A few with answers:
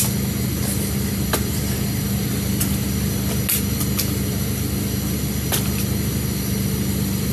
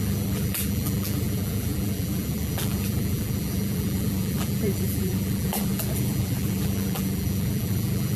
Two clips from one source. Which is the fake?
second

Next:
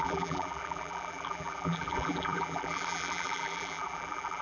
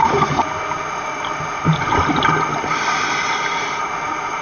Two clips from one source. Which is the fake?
first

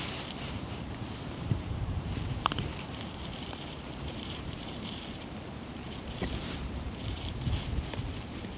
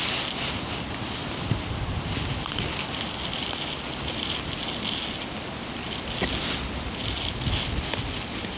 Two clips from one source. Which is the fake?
first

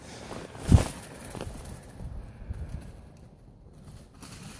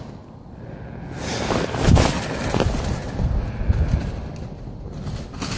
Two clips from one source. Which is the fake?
first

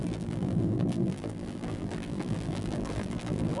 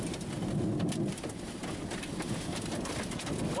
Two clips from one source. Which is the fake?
first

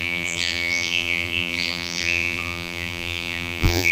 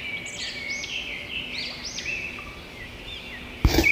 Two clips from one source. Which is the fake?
first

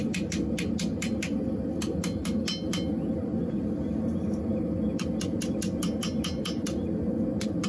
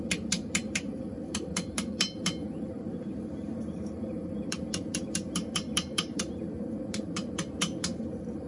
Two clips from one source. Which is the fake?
second